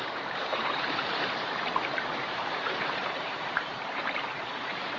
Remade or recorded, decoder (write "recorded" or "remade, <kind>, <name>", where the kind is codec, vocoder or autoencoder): remade, vocoder, BigVGAN v2